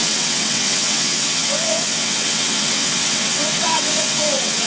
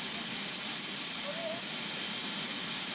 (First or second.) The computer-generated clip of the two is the first